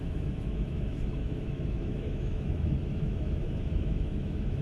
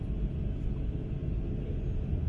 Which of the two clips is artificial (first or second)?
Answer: first